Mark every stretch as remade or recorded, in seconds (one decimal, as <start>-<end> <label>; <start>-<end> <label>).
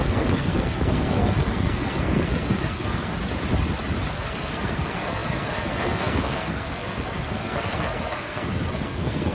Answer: 0.0-3.1 remade; 3.1-4.1 recorded; 4.1-9.3 remade